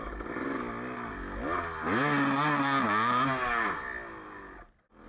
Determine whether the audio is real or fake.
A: real